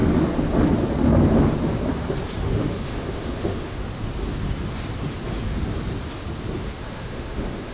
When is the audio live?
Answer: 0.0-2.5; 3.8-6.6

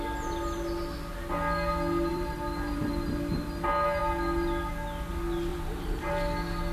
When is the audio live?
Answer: 0.0-2.1; 2.9-5.5; 6.1-6.7

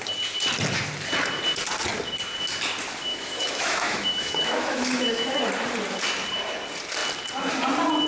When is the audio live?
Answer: 0.0-3.1; 5.4-8.1

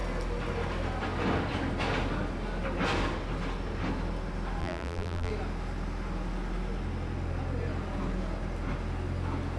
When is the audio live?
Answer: 0.0-4.6; 5.3-9.6